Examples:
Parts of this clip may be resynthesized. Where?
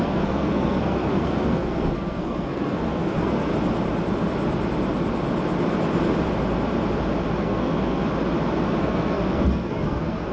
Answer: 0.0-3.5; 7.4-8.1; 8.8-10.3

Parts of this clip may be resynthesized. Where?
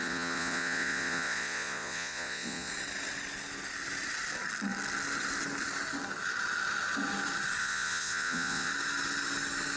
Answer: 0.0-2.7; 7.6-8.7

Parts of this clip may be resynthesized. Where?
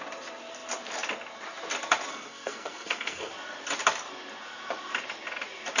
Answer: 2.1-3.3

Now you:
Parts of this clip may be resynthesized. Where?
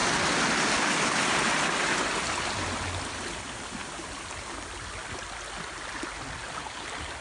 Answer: none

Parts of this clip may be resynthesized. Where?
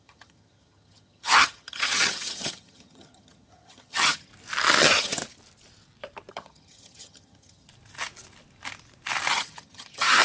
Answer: 0.0-4.3; 4.8-5.2; 6.3-7.7; 9.3-10.2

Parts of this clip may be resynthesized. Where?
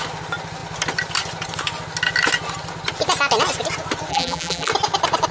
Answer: 4.1-4.7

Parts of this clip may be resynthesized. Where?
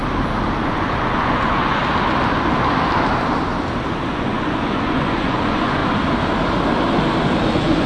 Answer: 0.6-1.8; 4.1-5.8; 7.5-7.9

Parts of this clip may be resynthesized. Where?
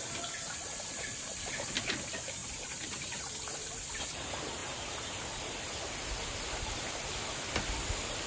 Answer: 2.4-3.2